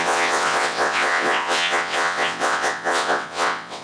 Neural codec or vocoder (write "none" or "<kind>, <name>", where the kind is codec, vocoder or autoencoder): vocoder, WaveNeXt